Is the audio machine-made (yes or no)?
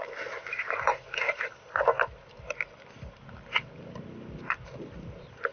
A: no